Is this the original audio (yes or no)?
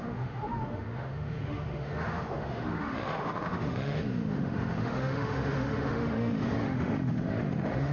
no